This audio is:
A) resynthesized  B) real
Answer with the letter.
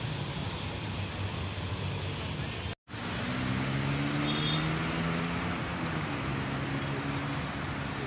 B